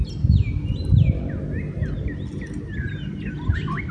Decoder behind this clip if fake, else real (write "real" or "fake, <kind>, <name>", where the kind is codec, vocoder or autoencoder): real